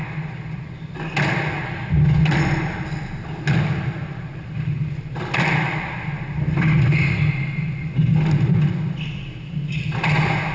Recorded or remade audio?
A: recorded